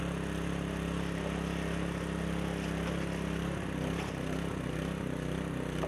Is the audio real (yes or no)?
yes